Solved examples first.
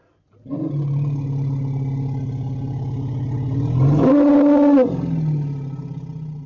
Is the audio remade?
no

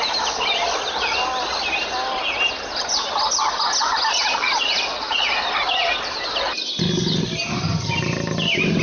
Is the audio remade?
no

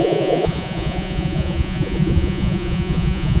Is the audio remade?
yes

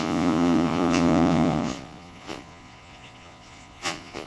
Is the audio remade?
yes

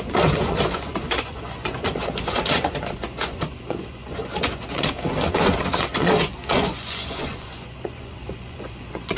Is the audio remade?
yes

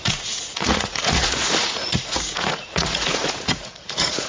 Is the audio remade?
yes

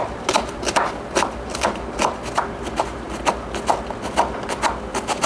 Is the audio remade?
no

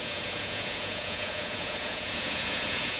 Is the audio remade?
yes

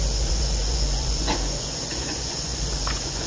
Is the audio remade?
yes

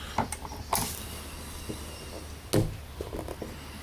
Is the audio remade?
no